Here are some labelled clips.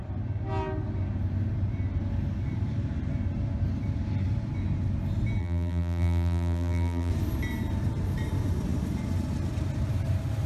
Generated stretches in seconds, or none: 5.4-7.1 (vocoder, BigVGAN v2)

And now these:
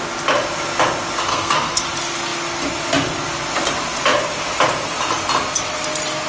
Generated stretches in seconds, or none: 1.3-1.8 (codec, SNAC)

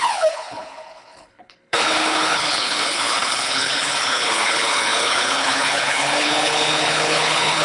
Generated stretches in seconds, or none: 0.0-7.6 (codec, HILCodec)

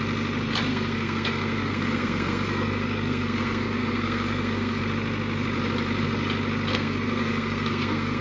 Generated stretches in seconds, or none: 0.7-4.8 (codec, SNAC); 6.7-8.2

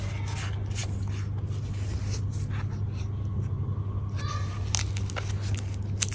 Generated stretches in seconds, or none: none

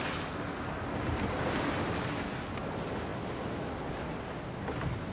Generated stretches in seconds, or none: none

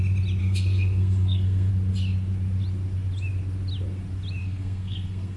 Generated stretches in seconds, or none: 0.4-1.7 (codec, SNAC); 4.4-5.4